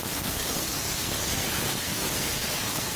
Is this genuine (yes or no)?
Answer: no